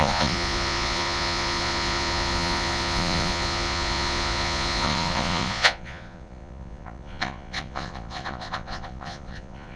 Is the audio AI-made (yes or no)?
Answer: yes